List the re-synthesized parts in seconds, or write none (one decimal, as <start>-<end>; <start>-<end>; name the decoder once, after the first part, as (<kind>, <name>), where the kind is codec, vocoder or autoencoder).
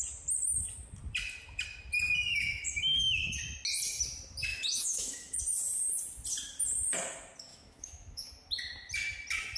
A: 2.3-3.4 (autoencoder, DAC-VAE); 4.5-5.4; 7.5-8.3